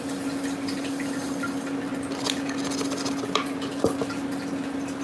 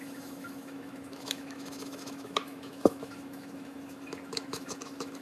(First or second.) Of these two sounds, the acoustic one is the first